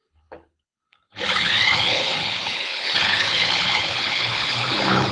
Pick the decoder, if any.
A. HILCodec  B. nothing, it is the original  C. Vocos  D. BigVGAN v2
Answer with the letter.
A